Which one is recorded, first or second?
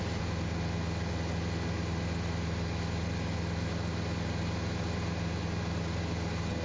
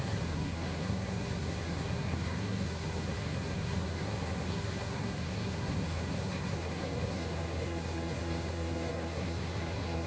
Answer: first